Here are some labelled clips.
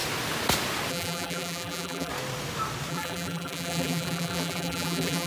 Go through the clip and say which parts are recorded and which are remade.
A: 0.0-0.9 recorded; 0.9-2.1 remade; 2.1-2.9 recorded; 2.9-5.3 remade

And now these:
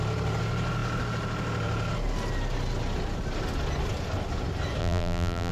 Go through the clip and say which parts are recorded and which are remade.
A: 0.0-4.8 recorded; 4.8-5.5 remade

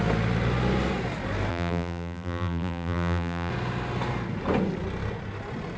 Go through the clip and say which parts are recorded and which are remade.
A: 0.0-1.5 recorded; 1.5-3.5 remade; 3.5-5.8 recorded

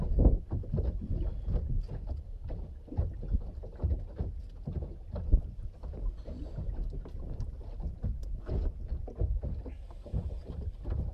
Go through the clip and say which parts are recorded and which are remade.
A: 0.0-11.1 recorded

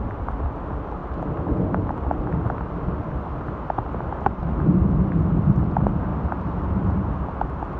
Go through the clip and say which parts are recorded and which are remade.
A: 0.0-6.1 recorded; 6.1-7.1 remade; 7.1-7.8 recorded

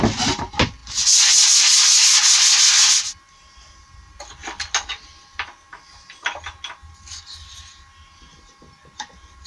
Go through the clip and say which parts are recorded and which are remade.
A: 0.0-9.5 recorded

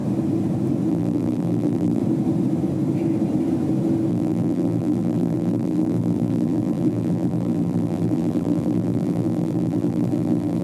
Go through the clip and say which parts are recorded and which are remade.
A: 0.0-0.9 recorded; 0.9-2.0 remade; 2.0-4.1 recorded; 4.1-10.6 remade

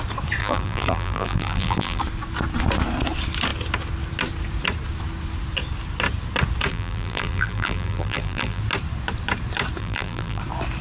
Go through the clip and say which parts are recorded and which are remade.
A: 0.0-0.4 recorded; 0.4-2.0 remade; 2.0-6.7 recorded; 6.7-8.6 remade; 8.6-9.8 recorded; 9.8-10.4 remade; 10.4-10.8 recorded